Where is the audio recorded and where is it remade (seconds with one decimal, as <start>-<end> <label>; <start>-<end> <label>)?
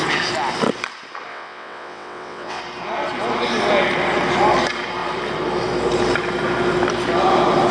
0.0-1.3 recorded; 1.3-2.6 remade; 2.6-7.7 recorded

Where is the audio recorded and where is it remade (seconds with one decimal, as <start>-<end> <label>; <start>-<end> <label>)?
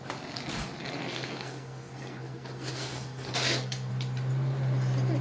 0.0-0.8 recorded; 0.8-3.9 remade; 3.9-5.2 recorded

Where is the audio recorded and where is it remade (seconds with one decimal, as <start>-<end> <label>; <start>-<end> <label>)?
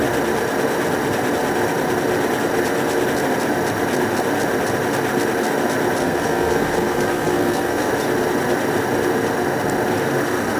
0.0-6.0 recorded; 6.0-7.9 remade; 7.9-10.6 recorded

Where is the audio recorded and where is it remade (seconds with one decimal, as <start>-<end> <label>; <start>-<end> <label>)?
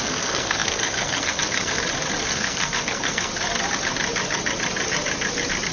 0.0-1.8 remade; 1.8-2.3 recorded; 2.3-3.3 remade; 3.3-5.7 recorded